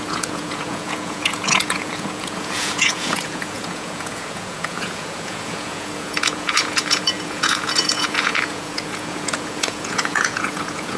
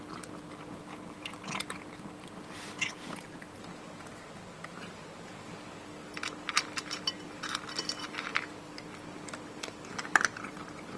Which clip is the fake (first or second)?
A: first